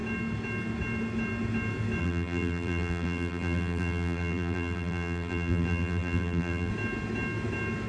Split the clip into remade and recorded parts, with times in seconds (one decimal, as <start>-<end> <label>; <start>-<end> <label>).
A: 0.0-2.0 recorded; 2.0-6.7 remade; 6.7-7.9 recorded